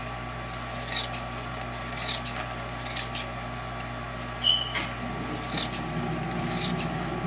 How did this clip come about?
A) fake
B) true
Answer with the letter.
B